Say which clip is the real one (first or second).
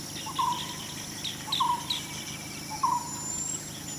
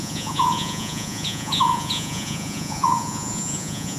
first